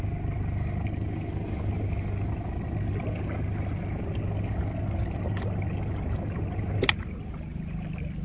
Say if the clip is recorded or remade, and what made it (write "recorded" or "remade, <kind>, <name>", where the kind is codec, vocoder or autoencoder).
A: recorded